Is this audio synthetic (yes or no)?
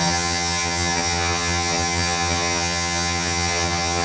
yes